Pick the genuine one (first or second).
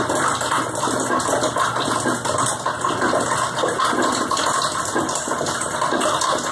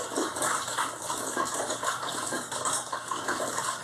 first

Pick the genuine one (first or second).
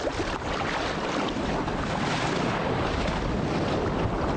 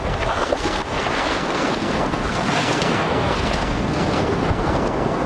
first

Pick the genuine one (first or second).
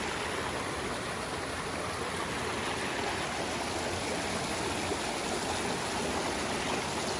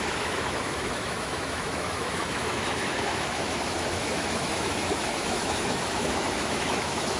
first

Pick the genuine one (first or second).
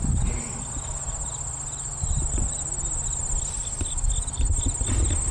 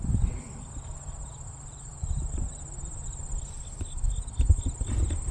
first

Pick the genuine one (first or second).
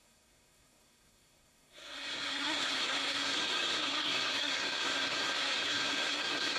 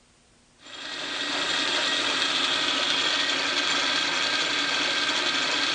second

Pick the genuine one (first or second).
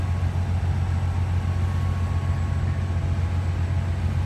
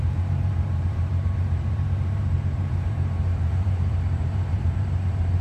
first